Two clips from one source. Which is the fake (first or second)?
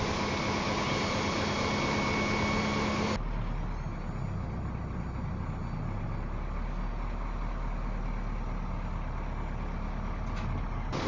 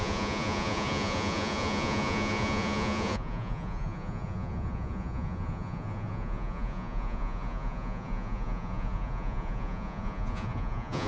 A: second